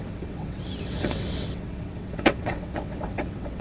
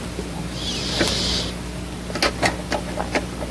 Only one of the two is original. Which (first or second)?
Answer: second